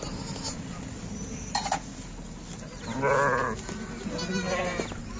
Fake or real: real